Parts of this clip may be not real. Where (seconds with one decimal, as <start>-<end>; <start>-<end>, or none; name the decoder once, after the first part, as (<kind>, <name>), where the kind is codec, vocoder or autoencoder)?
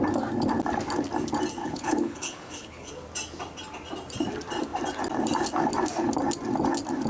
1.6-2.9 (codec, HILCodec)